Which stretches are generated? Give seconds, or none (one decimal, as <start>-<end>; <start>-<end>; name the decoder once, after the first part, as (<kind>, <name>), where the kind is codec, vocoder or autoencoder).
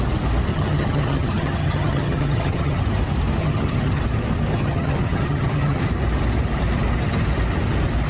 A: 0.5-2.8 (vocoder, HiFi-GAN); 3.4-4.0; 4.5-5.8